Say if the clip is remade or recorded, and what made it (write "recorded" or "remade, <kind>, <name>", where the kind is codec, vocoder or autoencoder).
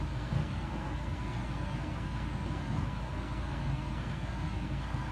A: remade, codec, SNAC